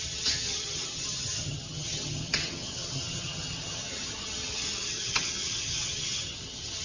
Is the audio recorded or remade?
remade